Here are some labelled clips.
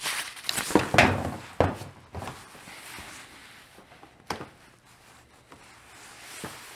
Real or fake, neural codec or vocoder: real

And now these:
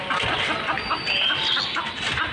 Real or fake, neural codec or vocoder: real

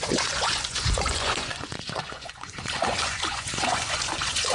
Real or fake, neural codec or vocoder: fake, vocoder, Vocos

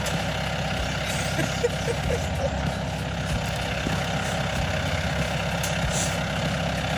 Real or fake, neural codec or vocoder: real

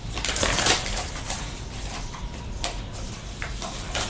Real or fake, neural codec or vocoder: fake, vocoder, BigVGAN v2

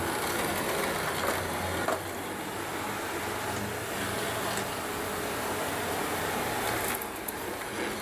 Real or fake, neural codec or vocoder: real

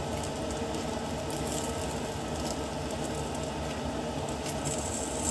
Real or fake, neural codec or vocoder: real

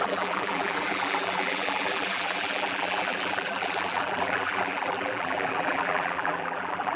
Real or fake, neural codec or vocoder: fake, vocoder, BigVGAN v2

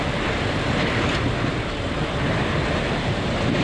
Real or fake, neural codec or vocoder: real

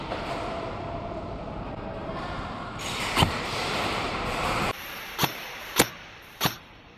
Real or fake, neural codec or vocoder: fake, vocoder, BigVGAN v2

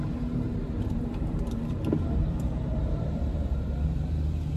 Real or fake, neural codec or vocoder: fake, vocoder, BigVGAN v2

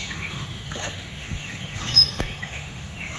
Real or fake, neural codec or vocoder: fake, autoencoder, DAC-VAE